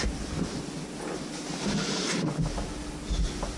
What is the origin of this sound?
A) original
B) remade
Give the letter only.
A